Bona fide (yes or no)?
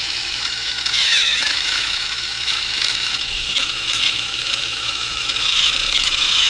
no